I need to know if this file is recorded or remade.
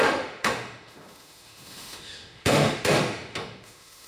remade